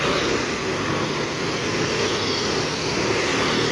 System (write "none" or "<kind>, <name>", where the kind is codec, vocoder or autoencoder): none